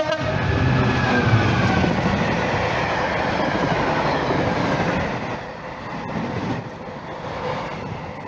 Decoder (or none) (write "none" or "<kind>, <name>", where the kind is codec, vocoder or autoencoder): none